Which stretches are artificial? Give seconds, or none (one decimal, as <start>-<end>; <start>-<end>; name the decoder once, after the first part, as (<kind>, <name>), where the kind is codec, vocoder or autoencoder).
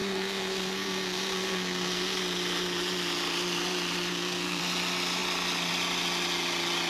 0.0-2.2 (codec, SNAC); 4.1-4.6